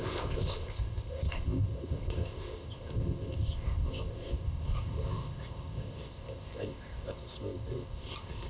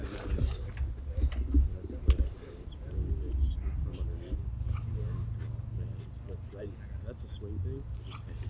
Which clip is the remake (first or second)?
first